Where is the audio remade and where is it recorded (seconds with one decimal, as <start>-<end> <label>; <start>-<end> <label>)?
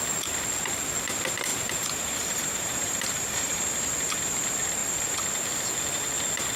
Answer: 0.0-1.5 recorded; 1.5-3.6 remade; 3.6-6.6 recorded